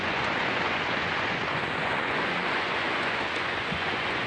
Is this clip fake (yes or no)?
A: yes